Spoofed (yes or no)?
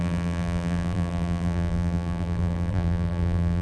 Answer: yes